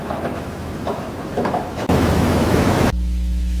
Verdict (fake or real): fake